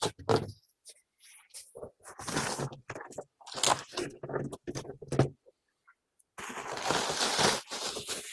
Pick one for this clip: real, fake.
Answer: real